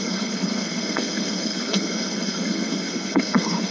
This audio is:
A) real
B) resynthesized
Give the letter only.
B